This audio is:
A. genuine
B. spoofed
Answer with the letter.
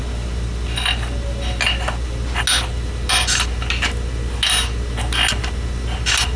A